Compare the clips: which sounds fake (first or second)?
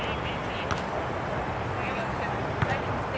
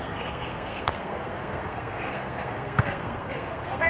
second